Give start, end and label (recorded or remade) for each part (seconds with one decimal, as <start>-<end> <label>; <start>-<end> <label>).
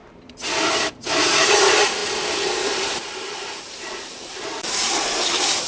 0.0-0.9 recorded; 0.9-5.7 remade